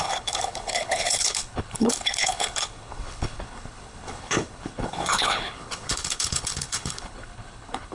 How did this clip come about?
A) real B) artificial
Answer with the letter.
B